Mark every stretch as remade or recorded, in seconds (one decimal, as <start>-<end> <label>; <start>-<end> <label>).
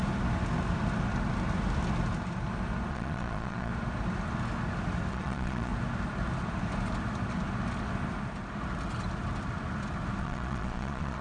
0.0-2.9 recorded; 2.9-3.7 remade; 3.7-5.1 recorded; 5.1-5.7 remade; 5.7-10.2 recorded; 10.2-11.2 remade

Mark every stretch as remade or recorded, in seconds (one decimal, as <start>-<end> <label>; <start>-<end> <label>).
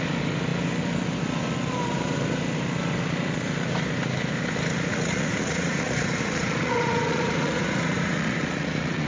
0.0-4.9 recorded; 4.9-9.1 remade